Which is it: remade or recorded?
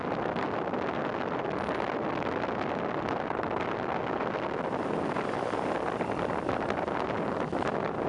recorded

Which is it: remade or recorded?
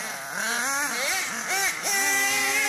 recorded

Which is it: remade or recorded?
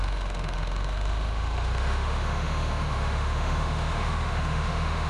remade